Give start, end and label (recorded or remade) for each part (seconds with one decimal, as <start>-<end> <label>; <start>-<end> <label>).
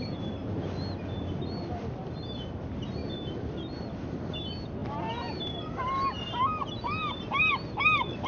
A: 0.0-8.3 recorded